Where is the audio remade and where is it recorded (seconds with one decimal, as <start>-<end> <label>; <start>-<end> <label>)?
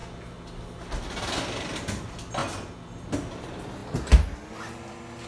0.0-5.3 recorded